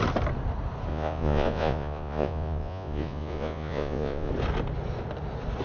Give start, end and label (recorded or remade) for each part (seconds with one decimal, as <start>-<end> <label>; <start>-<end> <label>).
0.0-0.9 recorded; 0.9-4.3 remade; 4.3-5.6 recorded